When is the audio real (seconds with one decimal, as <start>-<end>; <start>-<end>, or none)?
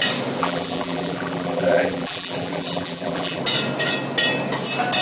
0.0-0.4; 3.4-5.0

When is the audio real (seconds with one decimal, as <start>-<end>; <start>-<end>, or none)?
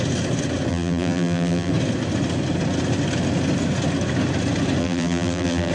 0.0-0.7; 1.7-4.8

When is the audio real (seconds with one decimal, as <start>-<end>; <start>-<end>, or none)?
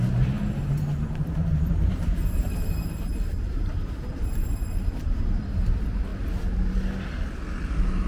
6.1-7.6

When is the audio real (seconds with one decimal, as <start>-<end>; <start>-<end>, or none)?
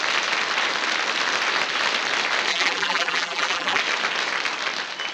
0.0-2.5; 3.8-5.1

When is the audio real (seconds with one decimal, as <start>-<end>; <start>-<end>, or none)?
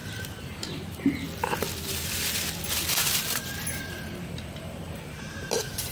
1.1-3.0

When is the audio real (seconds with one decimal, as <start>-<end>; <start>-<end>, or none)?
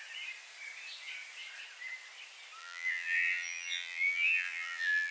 0.0-2.6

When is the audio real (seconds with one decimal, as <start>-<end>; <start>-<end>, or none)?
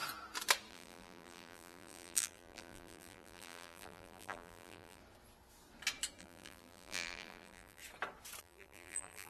0.0-0.7; 5.0-6.2; 7.8-8.4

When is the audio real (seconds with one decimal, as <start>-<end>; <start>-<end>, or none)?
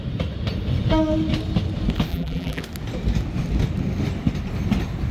0.0-2.1; 2.6-5.1